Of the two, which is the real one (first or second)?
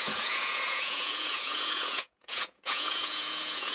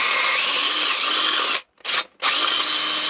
second